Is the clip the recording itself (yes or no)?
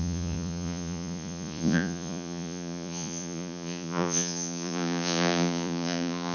no